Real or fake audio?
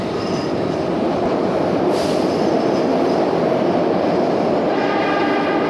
fake